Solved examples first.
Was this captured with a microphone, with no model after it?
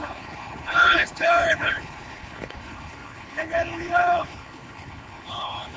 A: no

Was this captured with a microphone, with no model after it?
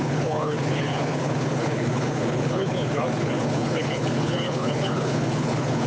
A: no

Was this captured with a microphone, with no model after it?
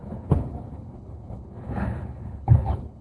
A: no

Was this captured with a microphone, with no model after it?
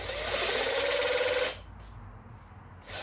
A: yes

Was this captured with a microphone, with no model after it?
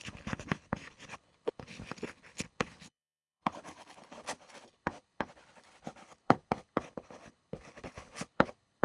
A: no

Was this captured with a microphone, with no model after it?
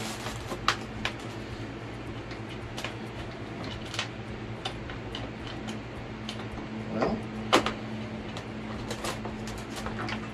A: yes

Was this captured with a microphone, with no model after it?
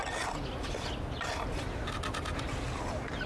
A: yes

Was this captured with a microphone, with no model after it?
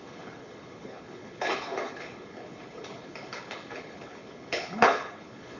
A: no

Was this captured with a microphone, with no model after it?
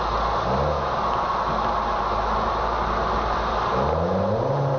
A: yes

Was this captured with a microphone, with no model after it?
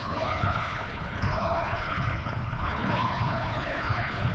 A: no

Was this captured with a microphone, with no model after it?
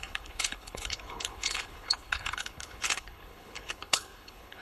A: no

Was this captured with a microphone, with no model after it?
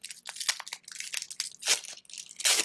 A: yes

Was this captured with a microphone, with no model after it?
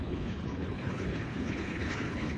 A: no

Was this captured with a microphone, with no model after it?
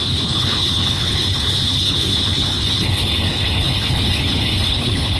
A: no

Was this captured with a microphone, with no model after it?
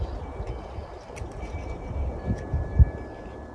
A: yes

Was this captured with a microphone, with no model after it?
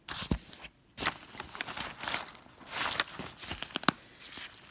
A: yes